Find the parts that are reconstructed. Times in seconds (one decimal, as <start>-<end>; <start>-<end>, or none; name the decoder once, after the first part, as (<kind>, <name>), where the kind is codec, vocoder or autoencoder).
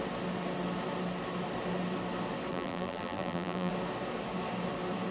2.5-3.7 (vocoder, BigVGAN v2)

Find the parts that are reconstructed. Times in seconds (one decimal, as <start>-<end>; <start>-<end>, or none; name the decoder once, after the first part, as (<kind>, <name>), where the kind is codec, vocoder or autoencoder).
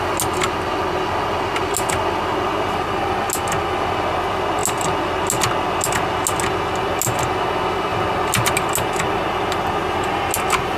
none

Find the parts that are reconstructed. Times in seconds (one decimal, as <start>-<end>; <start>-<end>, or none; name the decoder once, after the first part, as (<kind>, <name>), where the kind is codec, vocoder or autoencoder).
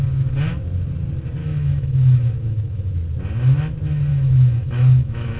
1.4-2.9 (autoencoder, DAC-VAE); 4.1-5.4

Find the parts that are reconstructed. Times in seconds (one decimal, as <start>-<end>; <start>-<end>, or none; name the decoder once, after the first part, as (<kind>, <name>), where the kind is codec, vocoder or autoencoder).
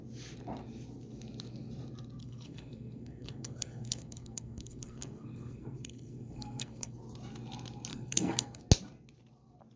2.2-7.0 (codec, SNAC); 7.9-8.6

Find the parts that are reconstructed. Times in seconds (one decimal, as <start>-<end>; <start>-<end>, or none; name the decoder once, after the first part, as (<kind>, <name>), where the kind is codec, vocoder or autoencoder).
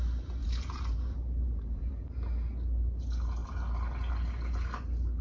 0.4-1.9 (vocoder, BigVGAN v2)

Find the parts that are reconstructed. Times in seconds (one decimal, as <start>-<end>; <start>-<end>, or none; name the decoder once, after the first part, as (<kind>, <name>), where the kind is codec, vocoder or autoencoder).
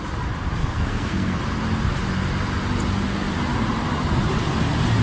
0.6-1.4 (codec, SNAC)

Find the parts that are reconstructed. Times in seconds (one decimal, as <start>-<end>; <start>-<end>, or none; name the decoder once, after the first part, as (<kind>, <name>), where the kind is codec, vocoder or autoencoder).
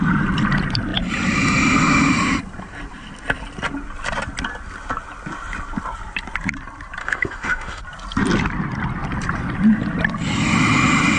7.0-7.8 (autoencoder, DAC-VAE)